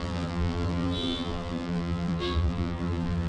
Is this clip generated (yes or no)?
yes